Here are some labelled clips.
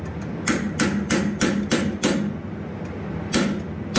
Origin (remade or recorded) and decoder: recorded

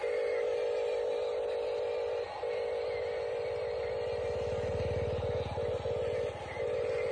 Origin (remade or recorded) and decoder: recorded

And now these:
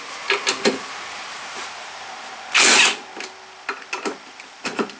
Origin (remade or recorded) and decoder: recorded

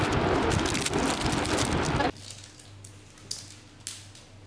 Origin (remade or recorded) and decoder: recorded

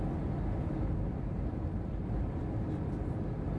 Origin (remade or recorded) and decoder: recorded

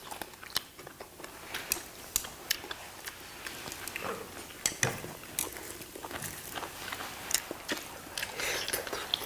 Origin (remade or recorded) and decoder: recorded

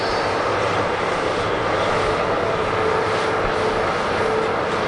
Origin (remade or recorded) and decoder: recorded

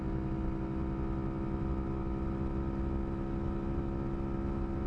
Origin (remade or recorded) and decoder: recorded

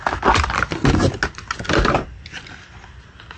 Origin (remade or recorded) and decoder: recorded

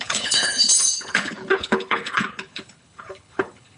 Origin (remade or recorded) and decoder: remade, codec, HILCodec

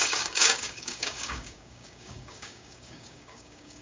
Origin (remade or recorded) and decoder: remade, codec, DAC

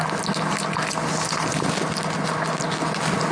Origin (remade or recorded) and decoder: recorded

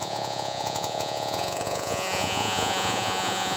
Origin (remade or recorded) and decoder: remade, vocoder, Vocos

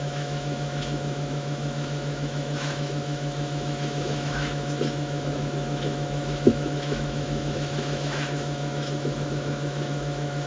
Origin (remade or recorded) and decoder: remade, autoencoder, DAC-VAE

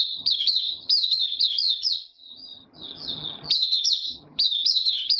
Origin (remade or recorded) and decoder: remade, vocoder, HiFi-GAN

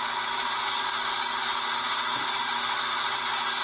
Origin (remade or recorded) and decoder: recorded